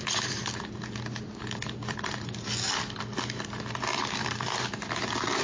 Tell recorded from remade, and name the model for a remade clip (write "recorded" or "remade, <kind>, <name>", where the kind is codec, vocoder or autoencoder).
remade, vocoder, BigVGAN v2